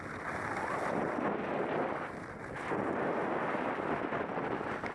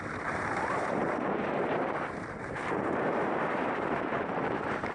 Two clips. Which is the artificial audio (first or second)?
second